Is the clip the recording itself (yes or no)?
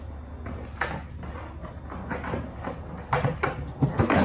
yes